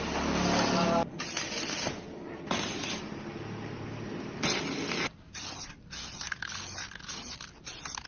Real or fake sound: real